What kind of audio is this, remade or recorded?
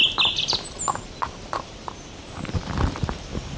recorded